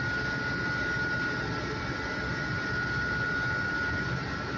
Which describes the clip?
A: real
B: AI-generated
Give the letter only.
A